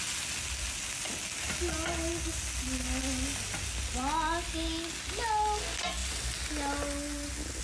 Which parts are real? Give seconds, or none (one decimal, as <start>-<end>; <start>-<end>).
0.0-7.6